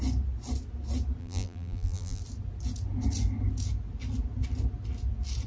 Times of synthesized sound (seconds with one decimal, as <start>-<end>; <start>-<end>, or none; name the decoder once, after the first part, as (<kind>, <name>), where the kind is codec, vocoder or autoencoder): 1.2-2.2 (vocoder, BigVGAN v2)